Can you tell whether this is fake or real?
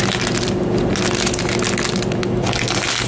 real